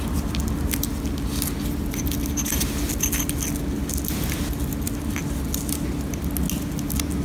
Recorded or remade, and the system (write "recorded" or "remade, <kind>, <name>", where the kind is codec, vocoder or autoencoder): recorded